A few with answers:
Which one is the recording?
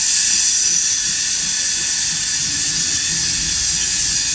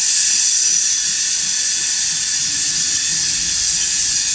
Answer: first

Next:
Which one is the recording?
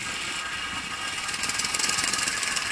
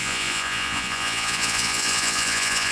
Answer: first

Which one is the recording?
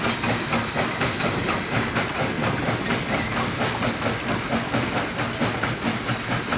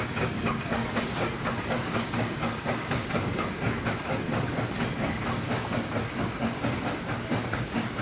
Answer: first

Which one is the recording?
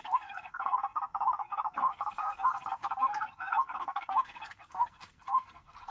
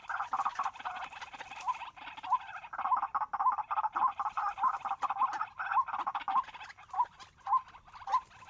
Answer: second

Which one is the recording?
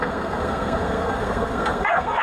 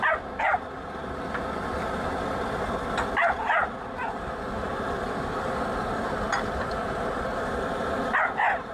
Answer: second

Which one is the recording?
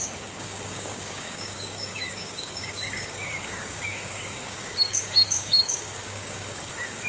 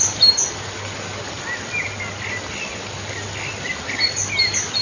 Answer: second